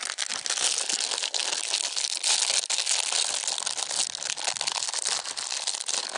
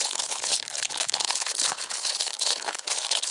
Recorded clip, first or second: first